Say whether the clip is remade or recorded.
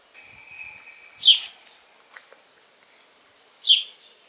recorded